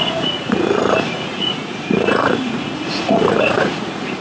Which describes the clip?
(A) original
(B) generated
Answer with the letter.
B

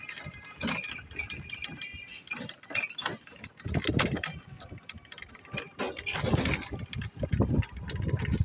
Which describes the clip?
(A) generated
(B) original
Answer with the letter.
B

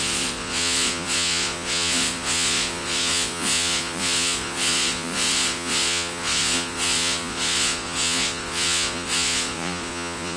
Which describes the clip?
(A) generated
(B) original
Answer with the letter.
A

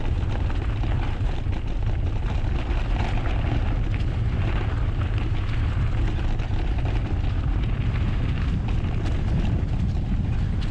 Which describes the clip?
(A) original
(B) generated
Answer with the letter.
A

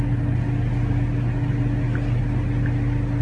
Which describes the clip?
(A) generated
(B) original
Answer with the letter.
B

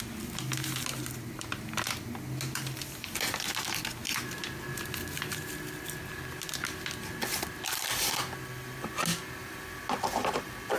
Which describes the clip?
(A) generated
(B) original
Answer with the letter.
B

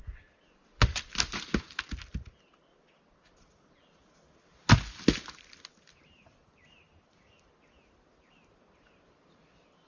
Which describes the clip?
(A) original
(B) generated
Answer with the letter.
A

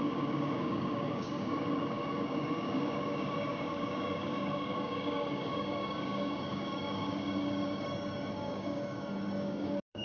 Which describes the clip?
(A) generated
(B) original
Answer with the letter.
A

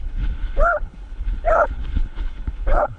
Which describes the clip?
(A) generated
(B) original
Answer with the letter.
A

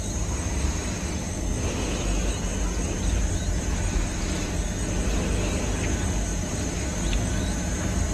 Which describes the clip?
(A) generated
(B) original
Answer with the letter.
B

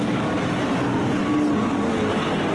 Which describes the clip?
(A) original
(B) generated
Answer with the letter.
A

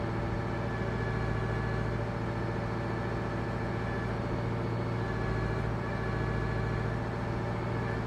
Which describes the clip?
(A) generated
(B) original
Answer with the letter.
B